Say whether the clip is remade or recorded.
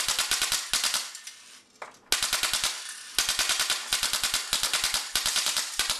recorded